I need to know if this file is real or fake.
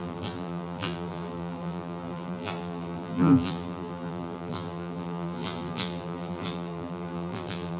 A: fake